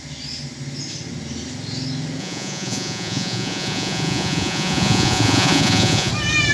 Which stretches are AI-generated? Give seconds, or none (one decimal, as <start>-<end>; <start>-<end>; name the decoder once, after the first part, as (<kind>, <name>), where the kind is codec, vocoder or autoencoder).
2.2-6.1 (vocoder, Vocos)